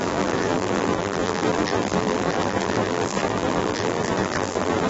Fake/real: fake